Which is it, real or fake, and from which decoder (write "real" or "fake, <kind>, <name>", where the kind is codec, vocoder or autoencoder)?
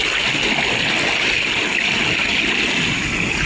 real